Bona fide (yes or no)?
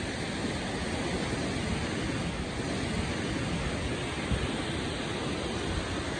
yes